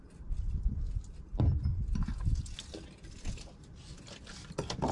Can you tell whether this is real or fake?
real